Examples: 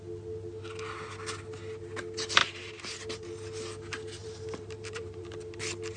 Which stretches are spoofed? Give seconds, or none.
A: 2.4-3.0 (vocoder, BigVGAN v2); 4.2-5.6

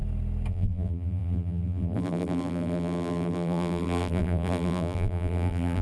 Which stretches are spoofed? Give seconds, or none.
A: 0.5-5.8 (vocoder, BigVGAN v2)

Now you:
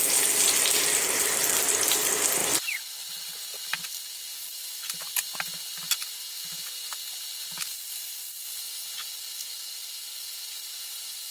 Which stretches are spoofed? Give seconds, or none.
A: none

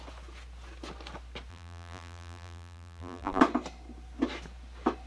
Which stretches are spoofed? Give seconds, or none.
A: 1.5-3.4 (vocoder, BigVGAN v2)

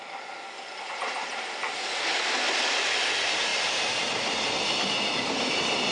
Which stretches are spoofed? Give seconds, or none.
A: none